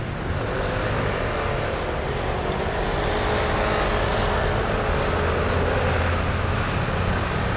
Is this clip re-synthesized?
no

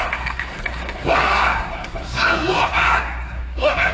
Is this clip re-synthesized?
yes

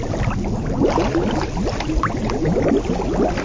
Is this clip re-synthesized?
no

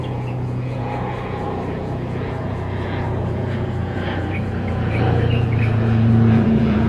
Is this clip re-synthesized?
yes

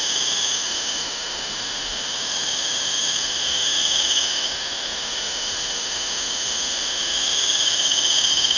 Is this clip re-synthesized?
yes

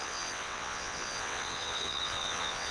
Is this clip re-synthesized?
yes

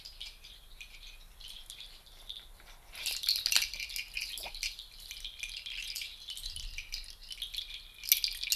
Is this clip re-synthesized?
no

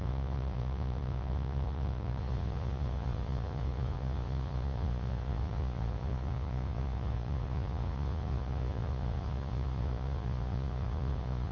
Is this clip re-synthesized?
yes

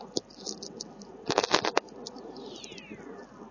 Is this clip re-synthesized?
no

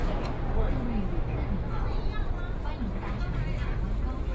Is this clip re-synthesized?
no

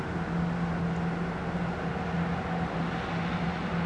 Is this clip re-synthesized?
no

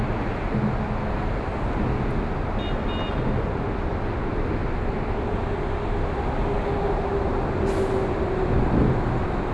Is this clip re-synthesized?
no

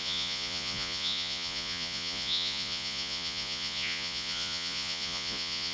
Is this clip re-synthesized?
yes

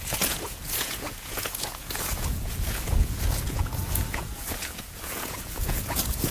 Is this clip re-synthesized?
yes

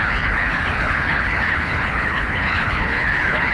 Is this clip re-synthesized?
yes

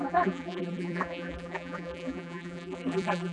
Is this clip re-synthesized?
yes